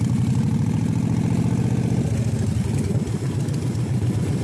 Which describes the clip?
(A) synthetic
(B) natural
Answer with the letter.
B